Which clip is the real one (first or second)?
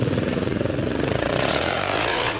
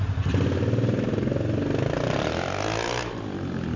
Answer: second